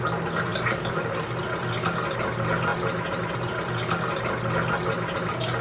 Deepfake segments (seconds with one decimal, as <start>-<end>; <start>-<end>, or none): none